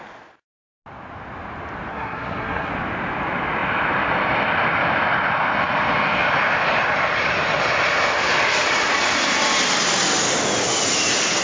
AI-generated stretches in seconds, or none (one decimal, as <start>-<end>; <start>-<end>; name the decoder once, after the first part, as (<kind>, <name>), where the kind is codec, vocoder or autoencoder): 1.9-2.7 (codec, SNAC)